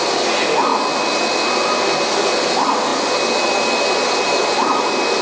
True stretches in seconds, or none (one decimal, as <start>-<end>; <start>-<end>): 0.0-5.2